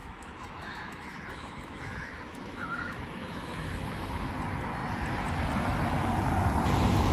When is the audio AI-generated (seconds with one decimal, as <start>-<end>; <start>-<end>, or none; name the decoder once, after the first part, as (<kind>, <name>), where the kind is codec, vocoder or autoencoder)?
0.0-4.3 (autoencoder, DAC-VAE)